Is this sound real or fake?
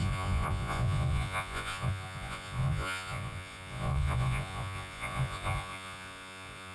fake